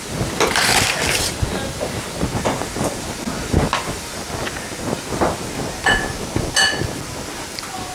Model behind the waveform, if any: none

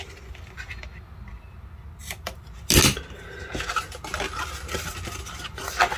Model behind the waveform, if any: none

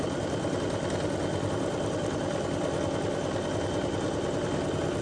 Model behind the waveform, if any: none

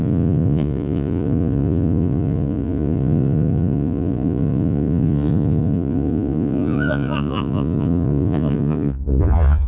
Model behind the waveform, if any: vocoder, Vocos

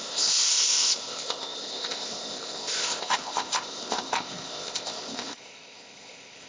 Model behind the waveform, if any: codec, ZipCodec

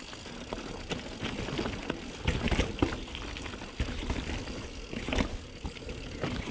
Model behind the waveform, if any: none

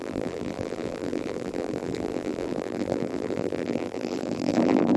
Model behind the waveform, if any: vocoder, BigVGAN v2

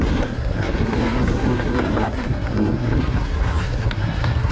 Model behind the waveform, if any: codec, SNAC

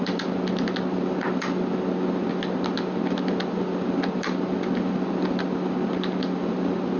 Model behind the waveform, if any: none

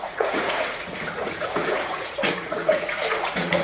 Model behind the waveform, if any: vocoder, Vocos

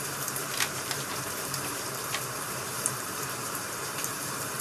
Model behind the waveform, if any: vocoder, BigVGAN v2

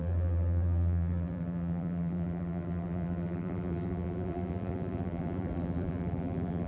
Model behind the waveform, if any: vocoder, BigVGAN v2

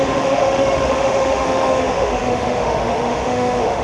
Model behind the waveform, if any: autoencoder, DAC-VAE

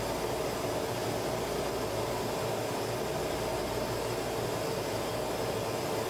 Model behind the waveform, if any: none